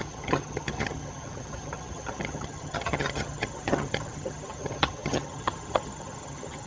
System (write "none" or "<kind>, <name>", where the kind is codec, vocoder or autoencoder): vocoder, HiFi-GAN